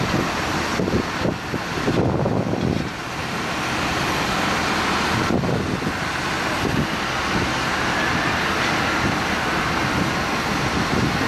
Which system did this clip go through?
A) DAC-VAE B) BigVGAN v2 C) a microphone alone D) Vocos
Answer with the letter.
C